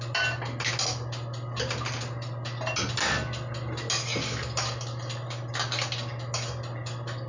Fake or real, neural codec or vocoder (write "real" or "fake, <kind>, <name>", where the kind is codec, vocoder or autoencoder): real